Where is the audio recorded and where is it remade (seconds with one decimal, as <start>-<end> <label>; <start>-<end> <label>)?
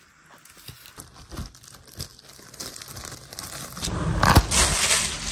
0.0-5.3 recorded